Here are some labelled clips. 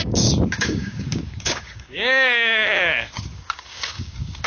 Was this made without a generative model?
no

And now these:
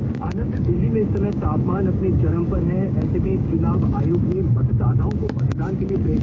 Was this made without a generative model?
no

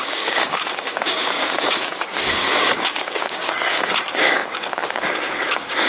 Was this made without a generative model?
no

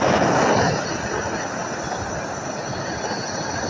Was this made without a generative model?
yes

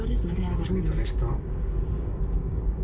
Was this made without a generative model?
no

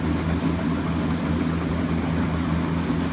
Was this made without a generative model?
yes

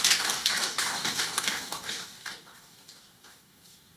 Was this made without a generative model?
no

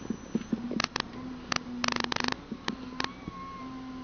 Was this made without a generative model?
yes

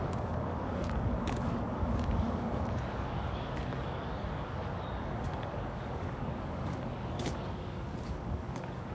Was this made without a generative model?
no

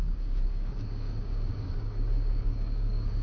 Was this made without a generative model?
no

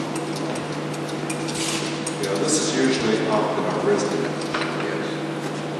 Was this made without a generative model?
yes